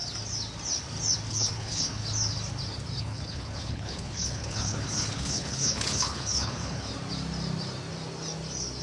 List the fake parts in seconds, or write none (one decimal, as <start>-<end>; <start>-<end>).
1.3-2.0; 3.0-6.9